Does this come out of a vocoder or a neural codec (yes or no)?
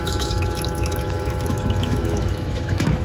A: yes